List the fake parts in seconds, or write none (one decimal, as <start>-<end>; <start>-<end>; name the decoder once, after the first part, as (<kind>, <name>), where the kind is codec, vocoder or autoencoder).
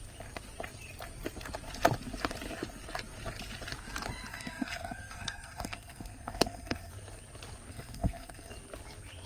4.3-6.9 (codec, SNAC); 7.7-8.5